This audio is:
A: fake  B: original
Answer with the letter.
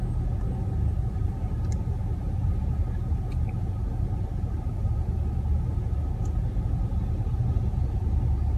B